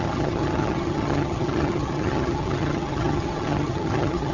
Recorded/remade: remade